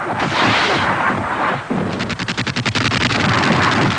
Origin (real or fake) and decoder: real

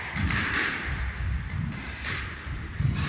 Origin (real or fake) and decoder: fake, vocoder, BigVGAN v2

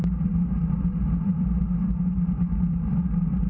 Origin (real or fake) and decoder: fake, vocoder, BigVGAN v2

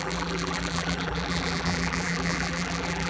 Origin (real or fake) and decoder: fake, vocoder, BigVGAN v2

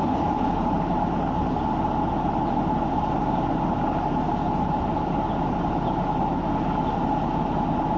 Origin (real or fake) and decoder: real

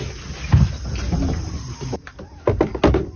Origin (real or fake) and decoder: real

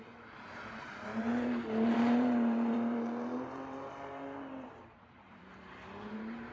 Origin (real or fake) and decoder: fake, vocoder, BigVGAN v2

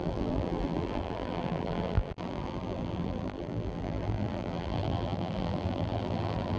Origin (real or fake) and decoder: fake, vocoder, BigVGAN v2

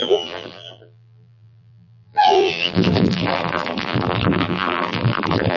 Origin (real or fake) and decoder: fake, vocoder, BigVGAN v2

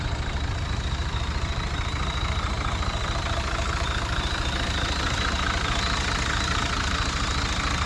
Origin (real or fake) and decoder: real